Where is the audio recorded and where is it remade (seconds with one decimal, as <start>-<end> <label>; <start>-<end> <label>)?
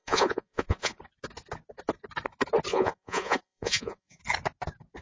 0.0-1.0 remade; 1.0-2.7 recorded; 2.7-4.2 remade; 4.2-5.0 recorded